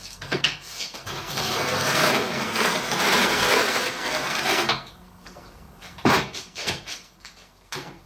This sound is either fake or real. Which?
fake